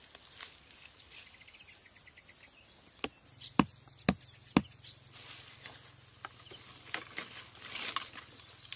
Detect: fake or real real